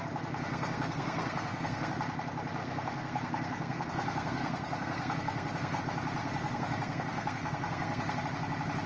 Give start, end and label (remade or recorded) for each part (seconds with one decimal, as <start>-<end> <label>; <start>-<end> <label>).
0.0-0.5 recorded; 0.5-1.9 remade; 1.9-2.6 recorded; 2.6-5.8 remade; 5.8-6.2 recorded; 6.2-8.2 remade; 8.2-8.9 recorded